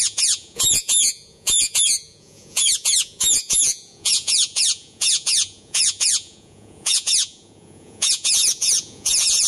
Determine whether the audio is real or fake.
fake